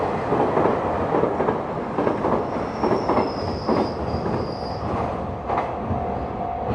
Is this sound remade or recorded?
recorded